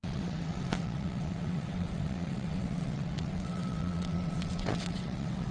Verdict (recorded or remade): remade